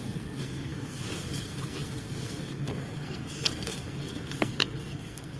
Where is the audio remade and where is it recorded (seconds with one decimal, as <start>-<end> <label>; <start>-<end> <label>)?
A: 0.0-5.4 remade